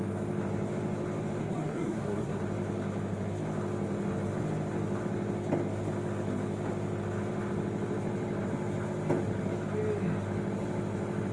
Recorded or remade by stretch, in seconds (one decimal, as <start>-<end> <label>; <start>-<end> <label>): 0.0-1.4 recorded; 1.4-2.4 remade; 2.4-11.3 recorded